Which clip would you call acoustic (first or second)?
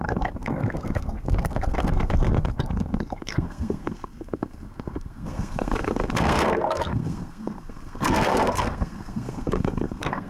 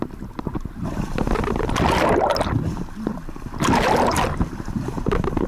second